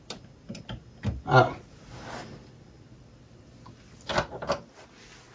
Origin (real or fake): real